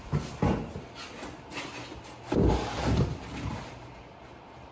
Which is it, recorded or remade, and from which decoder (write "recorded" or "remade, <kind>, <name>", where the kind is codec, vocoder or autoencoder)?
recorded